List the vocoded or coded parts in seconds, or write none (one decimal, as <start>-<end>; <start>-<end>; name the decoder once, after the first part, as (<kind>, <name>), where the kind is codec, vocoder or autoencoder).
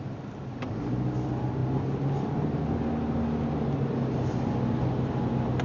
none